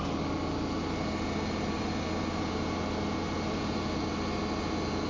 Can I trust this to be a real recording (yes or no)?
yes